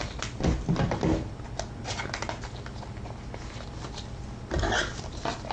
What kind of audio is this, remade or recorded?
recorded